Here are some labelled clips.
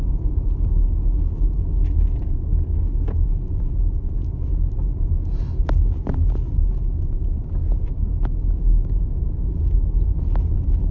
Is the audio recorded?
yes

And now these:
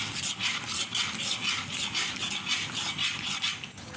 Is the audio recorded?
yes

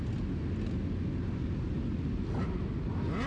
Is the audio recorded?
yes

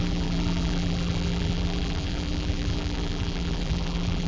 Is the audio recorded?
no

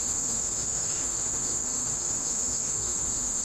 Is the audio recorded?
no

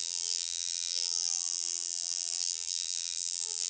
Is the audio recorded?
no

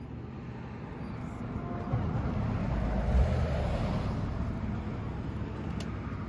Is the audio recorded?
yes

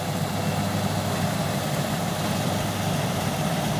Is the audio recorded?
yes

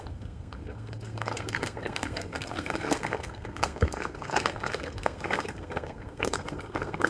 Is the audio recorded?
no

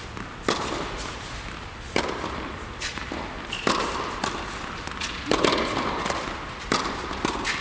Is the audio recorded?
no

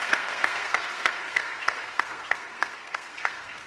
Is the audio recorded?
no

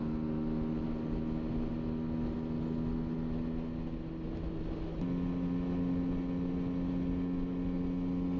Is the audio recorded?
yes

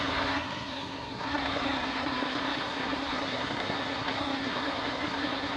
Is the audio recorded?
no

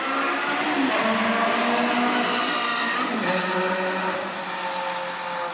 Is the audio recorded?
yes